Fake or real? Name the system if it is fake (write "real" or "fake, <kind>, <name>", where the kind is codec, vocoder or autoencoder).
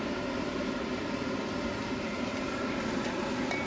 real